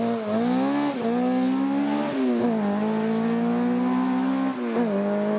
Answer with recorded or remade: recorded